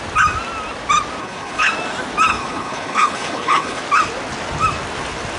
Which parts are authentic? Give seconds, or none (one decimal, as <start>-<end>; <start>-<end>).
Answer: 0.0-1.2; 1.7-2.3; 3.8-5.4

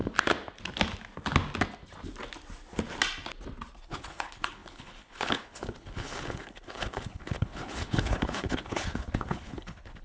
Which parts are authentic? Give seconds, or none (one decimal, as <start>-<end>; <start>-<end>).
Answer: 0.0-3.8

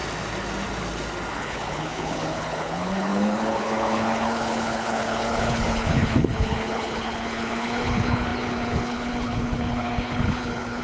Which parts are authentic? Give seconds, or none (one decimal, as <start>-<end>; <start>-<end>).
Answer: 0.0-1.3

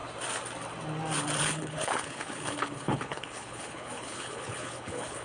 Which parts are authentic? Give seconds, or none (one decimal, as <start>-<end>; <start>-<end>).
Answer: 0.0-1.4